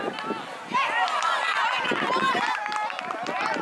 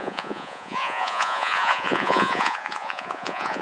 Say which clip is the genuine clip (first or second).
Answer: first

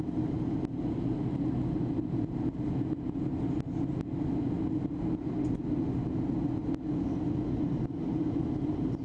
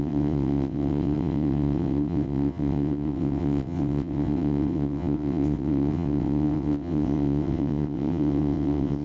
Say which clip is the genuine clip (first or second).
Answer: first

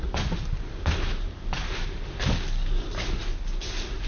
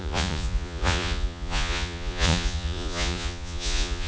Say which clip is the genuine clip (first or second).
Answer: first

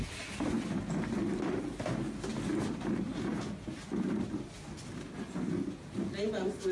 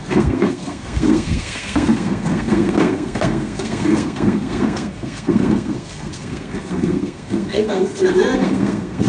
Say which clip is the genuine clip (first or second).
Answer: first